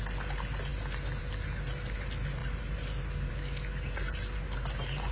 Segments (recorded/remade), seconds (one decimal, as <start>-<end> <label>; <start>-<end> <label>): 0.0-5.1 recorded